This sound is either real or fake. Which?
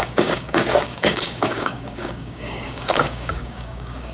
fake